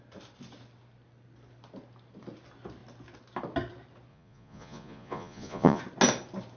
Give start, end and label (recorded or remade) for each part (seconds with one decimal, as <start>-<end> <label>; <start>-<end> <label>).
0.0-4.1 recorded; 4.1-5.8 remade; 5.8-6.6 recorded